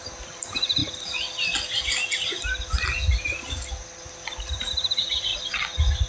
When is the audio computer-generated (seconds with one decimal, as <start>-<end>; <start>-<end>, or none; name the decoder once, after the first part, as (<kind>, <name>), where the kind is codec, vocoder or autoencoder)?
0.0-0.8 (vocoder, BigVGAN v2); 4.5-5.3